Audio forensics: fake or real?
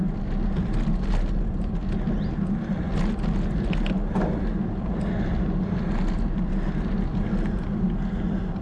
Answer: real